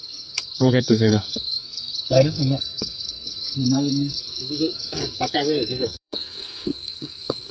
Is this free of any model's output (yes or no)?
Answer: no